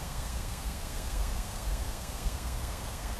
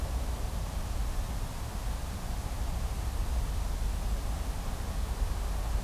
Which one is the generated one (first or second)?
first